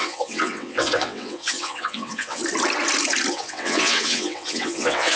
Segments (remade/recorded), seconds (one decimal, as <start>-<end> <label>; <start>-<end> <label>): 0.0-2.4 remade; 2.4-3.3 recorded; 3.3-5.2 remade